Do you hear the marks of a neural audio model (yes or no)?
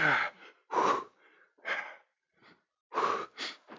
yes